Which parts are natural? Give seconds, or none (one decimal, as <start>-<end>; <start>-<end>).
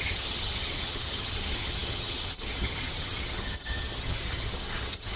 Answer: none